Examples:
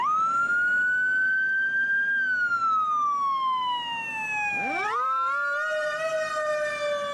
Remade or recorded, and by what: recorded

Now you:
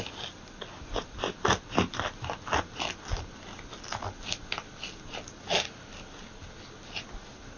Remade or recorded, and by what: recorded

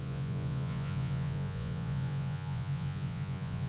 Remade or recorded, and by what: remade, vocoder, Vocos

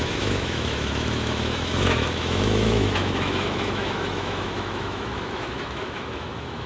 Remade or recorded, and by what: remade, autoencoder, DAC-VAE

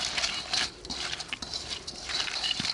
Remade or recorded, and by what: recorded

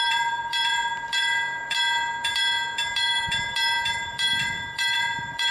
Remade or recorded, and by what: remade, vocoder, BigVGAN v2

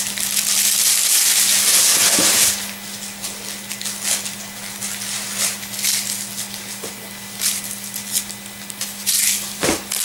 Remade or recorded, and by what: recorded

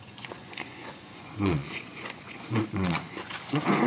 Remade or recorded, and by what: remade, vocoder, Vocos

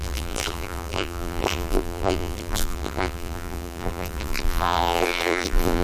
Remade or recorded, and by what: remade, vocoder, BigVGAN v2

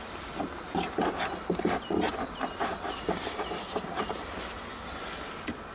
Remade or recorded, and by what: recorded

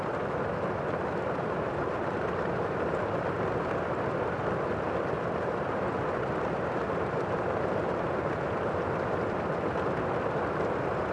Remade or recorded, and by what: remade, vocoder, BigVGAN v2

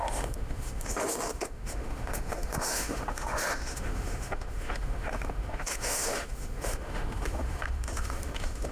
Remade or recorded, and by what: remade, autoencoder, DAC-VAE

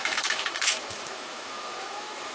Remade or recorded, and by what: remade, autoencoder, DAC-VAE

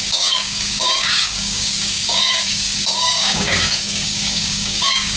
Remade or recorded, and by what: remade, codec, DAC